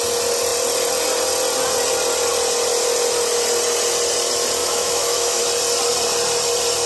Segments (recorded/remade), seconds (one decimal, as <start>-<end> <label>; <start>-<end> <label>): 0.0-4.6 recorded; 4.6-5.4 remade; 5.4-6.9 recorded